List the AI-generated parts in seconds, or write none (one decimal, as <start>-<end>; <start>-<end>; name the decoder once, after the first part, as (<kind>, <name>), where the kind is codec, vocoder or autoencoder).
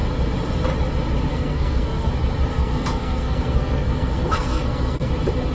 1.3-2.1 (codec, SNAC); 2.5-5.1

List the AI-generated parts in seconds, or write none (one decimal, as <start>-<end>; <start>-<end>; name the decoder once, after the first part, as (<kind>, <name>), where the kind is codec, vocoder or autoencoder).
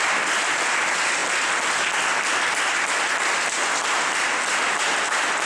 none